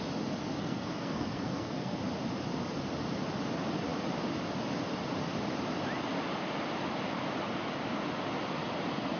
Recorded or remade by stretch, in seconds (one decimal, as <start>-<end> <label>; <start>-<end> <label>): 0.0-0.5 recorded; 0.5-2.0 remade; 2.0-9.2 recorded